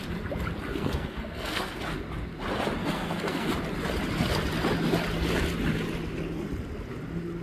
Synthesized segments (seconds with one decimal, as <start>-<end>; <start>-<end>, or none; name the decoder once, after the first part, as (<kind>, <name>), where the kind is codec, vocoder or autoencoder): 0.7-1.8 (codec, SNAC); 2.8-3.5